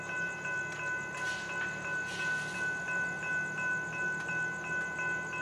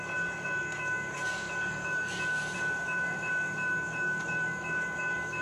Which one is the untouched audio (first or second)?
first